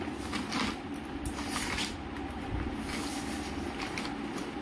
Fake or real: real